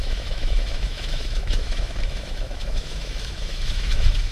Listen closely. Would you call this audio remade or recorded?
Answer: remade